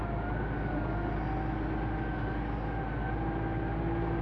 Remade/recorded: recorded